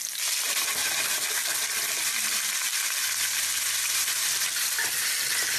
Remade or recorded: recorded